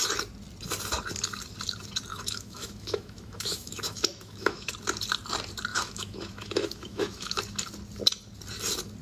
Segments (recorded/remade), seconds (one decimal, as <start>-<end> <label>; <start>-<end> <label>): 0.0-2.1 recorded; 2.1-4.7 remade; 4.7-5.7 recorded; 5.7-7.4 remade; 7.4-9.0 recorded